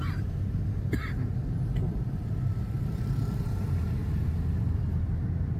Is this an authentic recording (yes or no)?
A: no